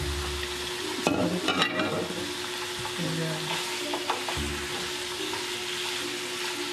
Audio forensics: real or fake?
real